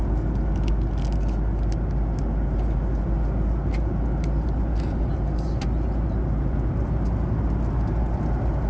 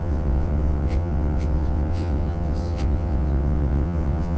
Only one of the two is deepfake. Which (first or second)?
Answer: second